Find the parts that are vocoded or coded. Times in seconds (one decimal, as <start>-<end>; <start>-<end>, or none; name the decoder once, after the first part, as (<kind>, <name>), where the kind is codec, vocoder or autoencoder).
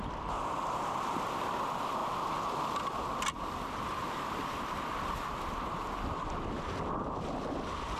none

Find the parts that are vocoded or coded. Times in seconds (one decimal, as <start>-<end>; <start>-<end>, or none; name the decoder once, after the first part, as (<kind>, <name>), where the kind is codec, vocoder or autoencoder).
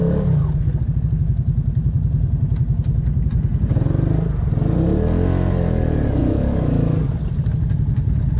6.2-6.9 (autoencoder, DAC-VAE)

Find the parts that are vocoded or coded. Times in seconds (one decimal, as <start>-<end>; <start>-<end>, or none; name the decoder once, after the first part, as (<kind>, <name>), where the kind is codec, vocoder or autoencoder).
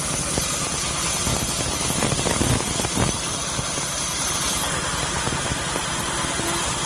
0.0-1.3 (vocoder, BigVGAN v2); 2.0-6.9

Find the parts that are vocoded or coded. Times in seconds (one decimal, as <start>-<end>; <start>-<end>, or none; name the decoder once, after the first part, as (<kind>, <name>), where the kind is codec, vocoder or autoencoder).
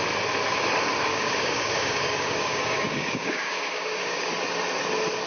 1.1-4.3 (codec, DAC)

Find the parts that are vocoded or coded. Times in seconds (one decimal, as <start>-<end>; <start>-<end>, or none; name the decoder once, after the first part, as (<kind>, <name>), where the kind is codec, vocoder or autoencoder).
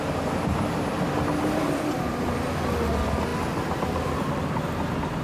none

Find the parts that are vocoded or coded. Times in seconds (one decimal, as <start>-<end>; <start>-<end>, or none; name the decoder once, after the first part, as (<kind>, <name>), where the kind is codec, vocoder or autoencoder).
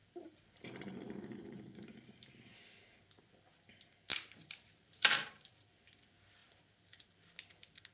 0.0-1.6 (vocoder, BigVGAN v2); 4.1-5.7; 6.4-7.1